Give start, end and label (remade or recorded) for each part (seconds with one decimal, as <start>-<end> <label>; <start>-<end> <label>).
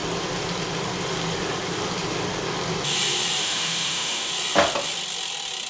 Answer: 0.0-3.4 recorded; 3.4-4.3 remade; 4.3-5.7 recorded